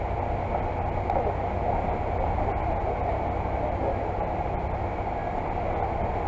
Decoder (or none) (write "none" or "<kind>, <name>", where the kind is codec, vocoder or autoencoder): none